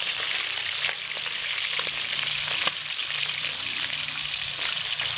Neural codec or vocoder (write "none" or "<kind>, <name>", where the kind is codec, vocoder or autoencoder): none